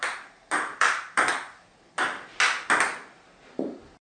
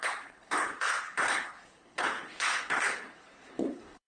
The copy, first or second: second